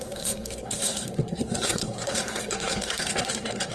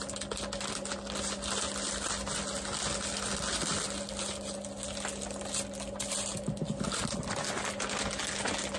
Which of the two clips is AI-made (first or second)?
first